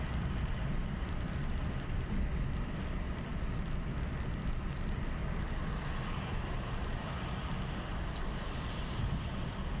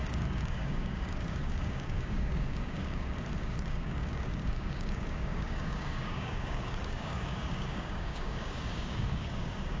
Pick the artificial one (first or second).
second